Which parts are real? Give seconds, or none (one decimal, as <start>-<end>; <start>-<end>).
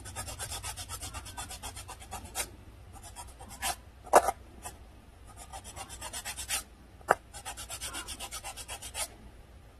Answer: 0.0-9.8